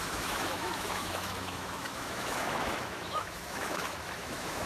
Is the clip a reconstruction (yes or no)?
yes